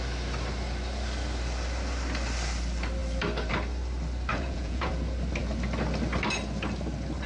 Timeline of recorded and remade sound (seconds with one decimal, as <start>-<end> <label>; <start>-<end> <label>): 0.0-4.3 recorded; 4.3-4.9 remade; 4.9-7.3 recorded